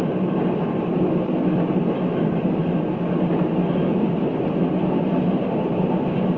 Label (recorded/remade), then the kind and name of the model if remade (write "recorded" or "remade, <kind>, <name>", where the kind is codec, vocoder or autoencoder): recorded